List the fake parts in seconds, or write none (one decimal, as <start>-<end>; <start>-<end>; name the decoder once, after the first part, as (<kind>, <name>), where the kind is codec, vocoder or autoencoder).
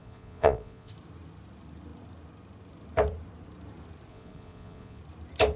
0.0-0.9 (vocoder, Vocos); 4.1-5.0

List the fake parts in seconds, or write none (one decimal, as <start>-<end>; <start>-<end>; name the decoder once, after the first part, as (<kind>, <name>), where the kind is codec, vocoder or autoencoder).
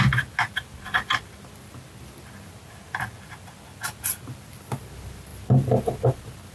none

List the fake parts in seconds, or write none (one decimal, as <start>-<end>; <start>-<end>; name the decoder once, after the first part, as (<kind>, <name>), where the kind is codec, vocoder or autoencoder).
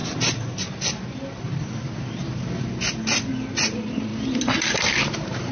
3.3-4.1 (vocoder, BigVGAN v2); 4.8-5.5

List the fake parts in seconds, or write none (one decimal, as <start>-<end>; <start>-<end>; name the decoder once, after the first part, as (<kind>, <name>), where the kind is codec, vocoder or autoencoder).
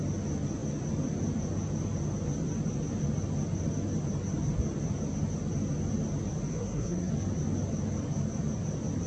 6.5-7.1 (codec, SNAC)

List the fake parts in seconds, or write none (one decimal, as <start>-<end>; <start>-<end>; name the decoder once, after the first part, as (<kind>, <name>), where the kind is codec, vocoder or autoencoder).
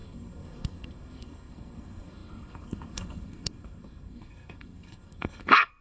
0.0-5.8 (codec, SNAC)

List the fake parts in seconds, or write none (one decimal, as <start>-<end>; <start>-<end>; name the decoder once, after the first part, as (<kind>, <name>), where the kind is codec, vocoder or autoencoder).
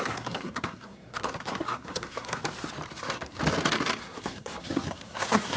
0.0-2.4 (codec, SNAC); 3.0-3.4; 4.0-5.6